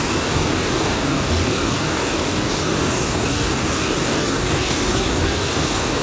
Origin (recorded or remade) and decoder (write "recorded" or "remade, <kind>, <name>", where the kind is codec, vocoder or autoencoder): remade, codec, DAC